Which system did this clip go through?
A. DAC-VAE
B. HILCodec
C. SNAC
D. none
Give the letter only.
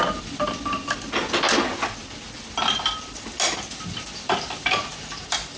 D